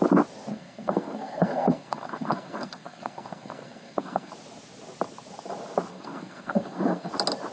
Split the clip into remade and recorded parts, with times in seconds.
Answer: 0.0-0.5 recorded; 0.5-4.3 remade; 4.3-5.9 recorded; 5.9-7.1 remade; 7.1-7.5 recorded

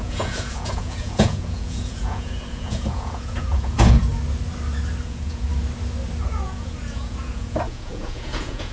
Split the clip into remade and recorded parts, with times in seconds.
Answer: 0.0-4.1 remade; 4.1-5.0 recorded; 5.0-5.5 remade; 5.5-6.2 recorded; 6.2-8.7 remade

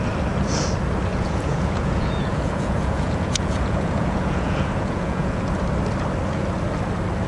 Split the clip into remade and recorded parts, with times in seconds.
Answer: 0.0-1.1 recorded; 1.1-5.5 remade; 5.5-7.3 recorded

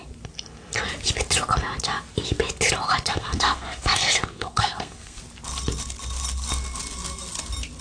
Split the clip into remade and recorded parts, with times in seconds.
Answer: 0.0-3.1 recorded; 3.1-5.2 remade; 5.2-7.8 recorded